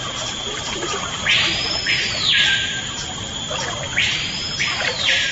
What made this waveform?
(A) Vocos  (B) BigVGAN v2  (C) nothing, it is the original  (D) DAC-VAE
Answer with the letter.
B